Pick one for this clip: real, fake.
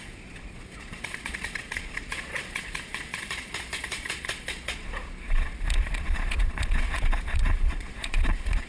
fake